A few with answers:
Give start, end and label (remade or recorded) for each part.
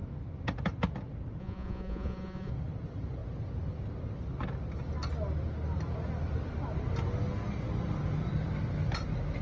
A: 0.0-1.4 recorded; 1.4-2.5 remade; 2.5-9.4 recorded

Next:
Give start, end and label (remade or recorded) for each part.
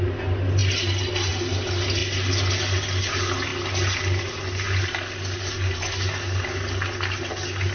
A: 0.0-7.7 recorded